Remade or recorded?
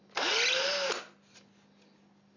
recorded